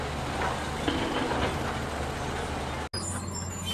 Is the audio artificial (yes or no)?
no